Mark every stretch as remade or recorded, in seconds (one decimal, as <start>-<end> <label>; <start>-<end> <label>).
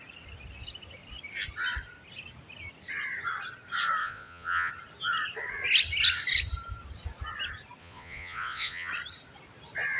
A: 0.0-4.0 recorded; 4.0-4.7 remade; 4.7-7.8 recorded; 7.8-8.9 remade; 8.9-10.0 recorded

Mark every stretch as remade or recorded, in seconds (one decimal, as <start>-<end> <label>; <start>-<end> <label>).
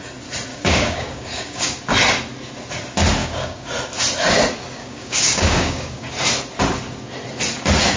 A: 0.0-0.5 recorded; 0.5-1.8 remade; 1.8-3.2 recorded; 3.2-3.7 remade; 3.7-4.8 recorded; 4.8-6.1 remade; 6.1-8.0 recorded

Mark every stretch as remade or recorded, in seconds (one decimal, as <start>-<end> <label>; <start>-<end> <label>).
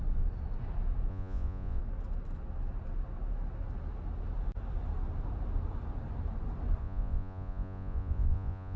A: 0.0-1.1 recorded; 1.1-1.8 remade; 1.8-6.8 recorded; 6.8-8.8 remade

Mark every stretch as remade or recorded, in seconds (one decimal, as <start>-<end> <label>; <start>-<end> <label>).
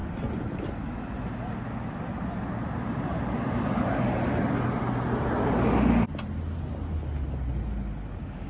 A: 0.0-8.5 recorded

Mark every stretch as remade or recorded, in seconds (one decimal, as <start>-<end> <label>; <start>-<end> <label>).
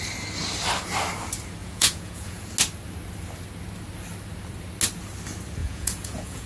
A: 0.0-1.6 recorded; 1.6-2.4 remade; 2.4-5.6 recorded; 5.6-6.5 remade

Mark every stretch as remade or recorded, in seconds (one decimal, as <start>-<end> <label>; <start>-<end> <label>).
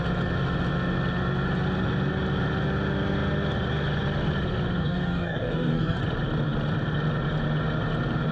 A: 0.0-4.8 recorded; 4.8-6.0 remade; 6.0-8.3 recorded